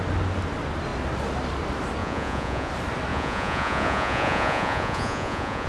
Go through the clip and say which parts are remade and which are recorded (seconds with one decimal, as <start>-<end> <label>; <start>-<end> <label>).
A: 0.0-2.0 recorded; 2.0-2.7 remade; 2.7-3.1 recorded; 3.1-5.7 remade